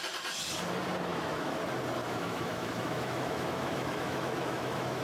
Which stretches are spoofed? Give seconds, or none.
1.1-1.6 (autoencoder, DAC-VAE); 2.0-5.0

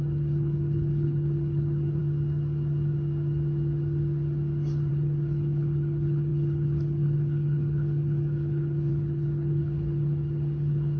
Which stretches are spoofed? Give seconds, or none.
0.0-2.0 (codec, HILCodec); 4.9-11.0

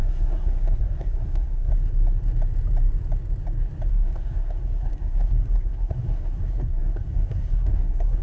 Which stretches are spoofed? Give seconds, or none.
0.0-1.7 (codec, SNAC); 3.9-8.2

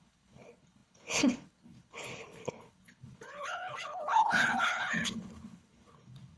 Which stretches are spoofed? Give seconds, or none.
0.0-6.4 (codec, HILCodec)

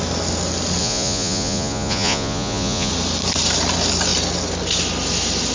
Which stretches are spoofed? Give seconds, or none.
0.8-2.9 (vocoder, Vocos)

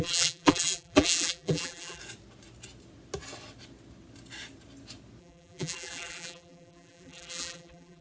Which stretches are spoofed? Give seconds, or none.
0.0-2.0 (vocoder, BigVGAN v2); 5.2-8.0